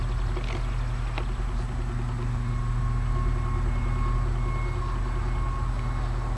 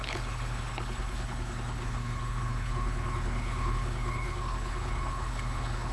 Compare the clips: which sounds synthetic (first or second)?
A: second